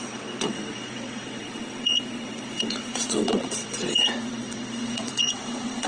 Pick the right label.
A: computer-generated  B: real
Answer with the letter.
A